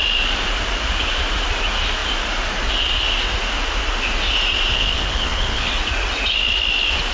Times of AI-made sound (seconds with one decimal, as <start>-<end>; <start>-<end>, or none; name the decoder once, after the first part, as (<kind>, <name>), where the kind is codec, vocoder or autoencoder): 4.7-5.7 (codec, HILCodec)